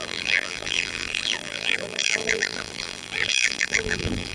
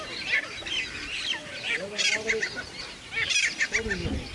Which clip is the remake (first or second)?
first